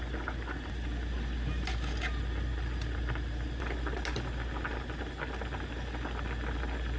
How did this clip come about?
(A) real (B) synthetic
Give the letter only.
A